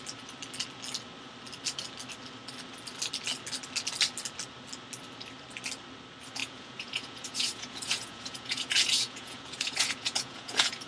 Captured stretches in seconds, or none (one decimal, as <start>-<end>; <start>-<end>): 0.0-6.4